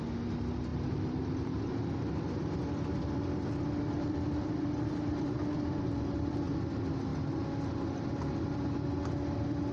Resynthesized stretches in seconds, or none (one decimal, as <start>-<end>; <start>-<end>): 0.7-1.9; 2.6-6.5